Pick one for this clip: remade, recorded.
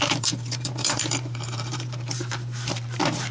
remade